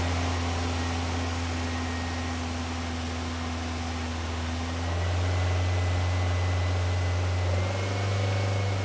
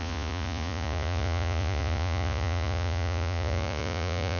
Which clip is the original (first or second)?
first